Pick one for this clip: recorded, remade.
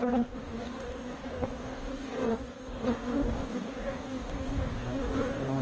remade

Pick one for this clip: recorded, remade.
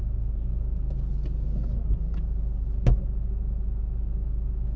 recorded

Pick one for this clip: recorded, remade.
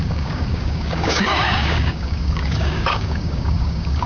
remade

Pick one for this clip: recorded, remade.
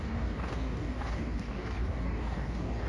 remade